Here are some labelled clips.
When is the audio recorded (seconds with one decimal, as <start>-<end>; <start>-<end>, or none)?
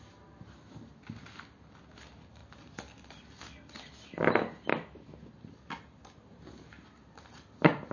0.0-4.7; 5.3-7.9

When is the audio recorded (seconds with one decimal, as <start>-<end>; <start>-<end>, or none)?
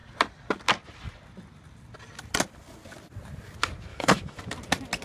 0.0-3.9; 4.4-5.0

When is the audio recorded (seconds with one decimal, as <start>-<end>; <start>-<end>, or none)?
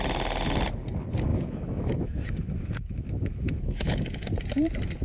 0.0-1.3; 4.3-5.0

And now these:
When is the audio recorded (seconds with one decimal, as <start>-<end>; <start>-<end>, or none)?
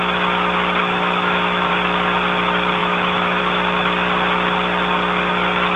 0.0-0.8; 1.7-2.8; 3.4-5.8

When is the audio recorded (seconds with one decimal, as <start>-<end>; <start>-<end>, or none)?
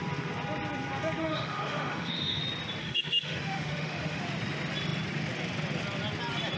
0.0-1.2; 2.4-2.8; 4.2-6.6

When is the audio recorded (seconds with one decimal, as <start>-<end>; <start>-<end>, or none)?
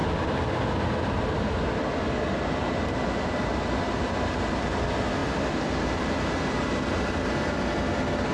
0.0-8.3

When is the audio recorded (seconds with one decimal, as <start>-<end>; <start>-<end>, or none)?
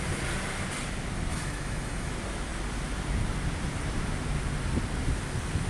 0.0-1.3; 2.1-5.7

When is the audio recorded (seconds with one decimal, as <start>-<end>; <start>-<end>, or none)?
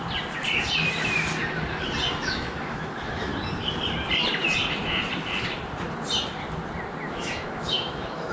0.0-2.1; 3.3-7.1